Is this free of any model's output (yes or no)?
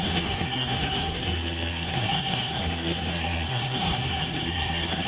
no